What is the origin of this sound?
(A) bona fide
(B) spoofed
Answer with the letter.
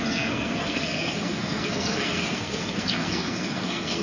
B